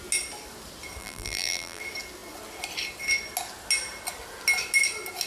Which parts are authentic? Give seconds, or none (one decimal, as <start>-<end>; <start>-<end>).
0.0-1.0; 1.8-5.3